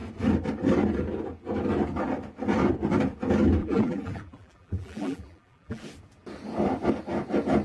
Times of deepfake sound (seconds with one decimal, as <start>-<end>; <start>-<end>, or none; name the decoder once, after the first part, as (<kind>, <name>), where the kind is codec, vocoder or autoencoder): 3.6-5.8 (vocoder, BigVGAN v2)